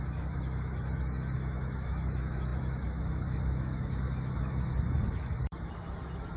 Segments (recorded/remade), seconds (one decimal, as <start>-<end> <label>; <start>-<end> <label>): 0.0-6.4 remade